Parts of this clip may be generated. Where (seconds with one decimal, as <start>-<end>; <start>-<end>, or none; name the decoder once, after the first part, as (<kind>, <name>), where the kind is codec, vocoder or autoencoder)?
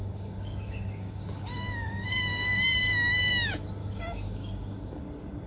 0.0-3.3 (codec, DAC); 3.8-5.0